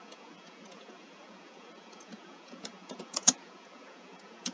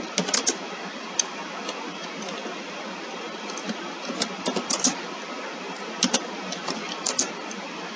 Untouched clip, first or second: second